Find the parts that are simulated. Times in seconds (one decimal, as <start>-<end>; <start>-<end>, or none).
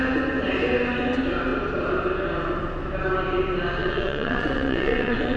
3.8-5.4